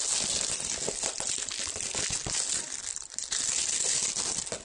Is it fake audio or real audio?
real